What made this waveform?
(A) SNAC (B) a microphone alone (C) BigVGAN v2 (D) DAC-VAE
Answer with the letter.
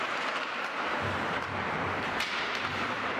C